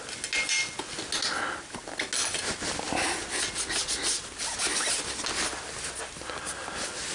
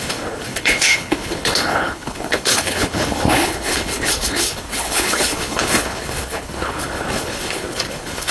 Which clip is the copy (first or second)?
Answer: second